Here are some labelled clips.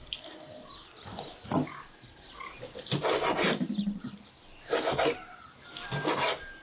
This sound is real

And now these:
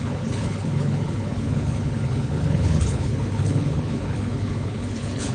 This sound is fake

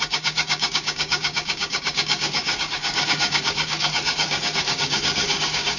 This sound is fake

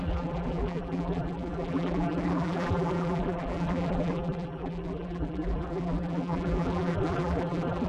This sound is fake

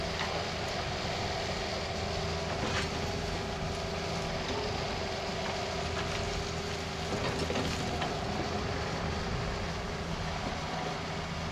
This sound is real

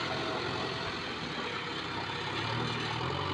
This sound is real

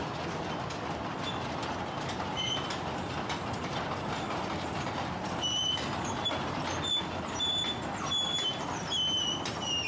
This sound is real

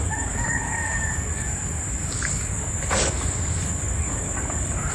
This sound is fake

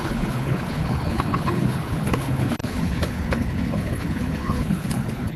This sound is fake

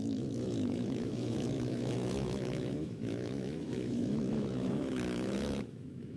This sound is fake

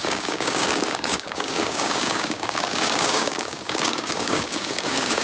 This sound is fake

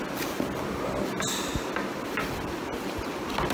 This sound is real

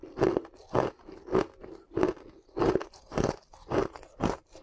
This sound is real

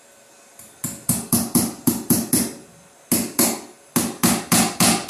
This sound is real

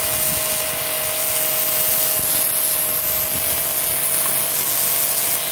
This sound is real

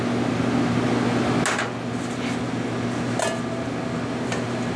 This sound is real